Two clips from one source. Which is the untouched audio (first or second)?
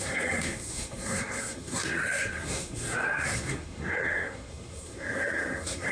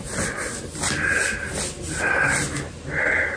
second